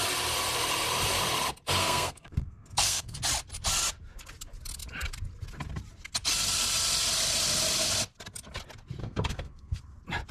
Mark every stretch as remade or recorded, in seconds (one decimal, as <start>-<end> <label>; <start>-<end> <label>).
0.0-1.8 recorded; 1.8-3.2 remade; 3.2-9.0 recorded; 9.0-9.8 remade; 9.8-10.3 recorded